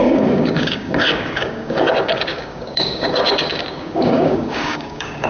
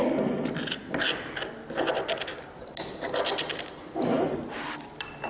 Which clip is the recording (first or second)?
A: second